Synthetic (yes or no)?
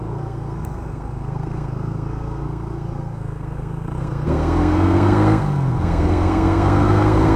yes